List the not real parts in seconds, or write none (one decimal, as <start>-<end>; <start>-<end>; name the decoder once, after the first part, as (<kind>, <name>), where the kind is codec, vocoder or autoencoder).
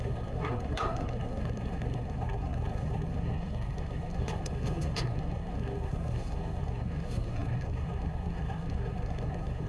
0.0-9.7 (codec, SNAC)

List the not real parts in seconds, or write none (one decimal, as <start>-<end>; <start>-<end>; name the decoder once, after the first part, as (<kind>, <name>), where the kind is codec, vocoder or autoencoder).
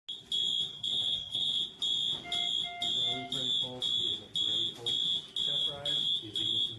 0.7-1.6 (codec, SNAC)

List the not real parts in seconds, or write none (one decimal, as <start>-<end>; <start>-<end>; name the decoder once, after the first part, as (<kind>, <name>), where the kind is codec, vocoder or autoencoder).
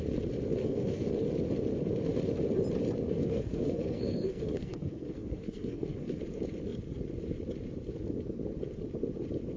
0.6-1.1 (codec, SNAC); 3.2-6.2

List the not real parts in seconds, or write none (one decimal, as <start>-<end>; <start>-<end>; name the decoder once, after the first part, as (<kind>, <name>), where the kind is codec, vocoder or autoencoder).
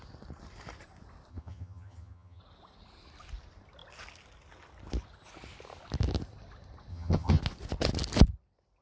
1.3-2.4 (vocoder, HiFi-GAN); 6.9-7.4